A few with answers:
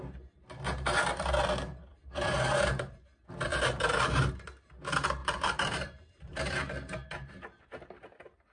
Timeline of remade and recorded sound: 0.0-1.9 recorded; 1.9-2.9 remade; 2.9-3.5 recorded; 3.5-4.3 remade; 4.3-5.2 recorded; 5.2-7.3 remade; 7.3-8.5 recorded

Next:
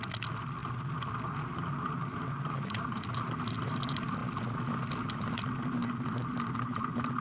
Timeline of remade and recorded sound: 0.0-5.8 recorded; 5.8-7.2 remade

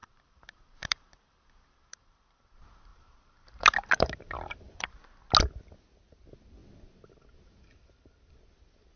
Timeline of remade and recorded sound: 0.0-2.5 remade; 2.5-2.9 recorded; 2.9-4.9 remade; 4.9-9.0 recorded

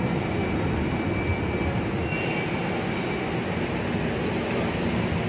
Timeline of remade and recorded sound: 0.0-5.3 recorded

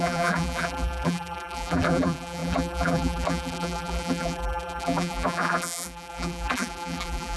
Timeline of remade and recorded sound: 0.0-7.4 remade